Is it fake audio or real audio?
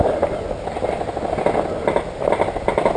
real